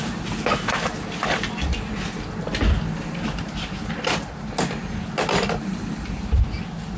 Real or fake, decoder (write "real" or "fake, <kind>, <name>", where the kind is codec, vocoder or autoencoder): real